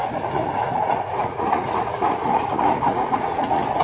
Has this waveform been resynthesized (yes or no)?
yes